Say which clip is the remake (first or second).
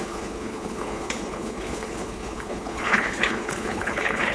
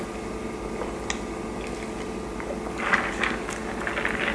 first